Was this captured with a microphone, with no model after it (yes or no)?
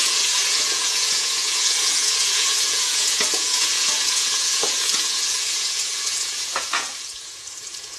no